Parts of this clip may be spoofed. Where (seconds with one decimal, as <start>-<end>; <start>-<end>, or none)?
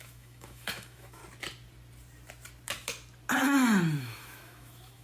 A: 0.0-1.2; 4.0-5.0